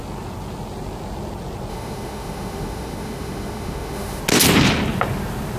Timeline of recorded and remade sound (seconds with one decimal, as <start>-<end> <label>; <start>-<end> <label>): 0.0-1.7 recorded; 1.7-4.2 remade; 4.2-5.6 recorded